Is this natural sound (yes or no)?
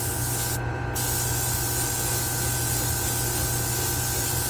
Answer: yes